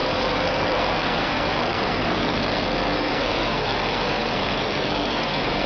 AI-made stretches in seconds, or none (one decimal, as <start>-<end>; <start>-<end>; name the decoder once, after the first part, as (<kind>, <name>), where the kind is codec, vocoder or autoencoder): 0.0-5.7 (codec, SNAC)